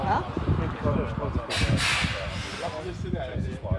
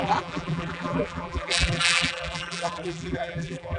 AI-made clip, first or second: second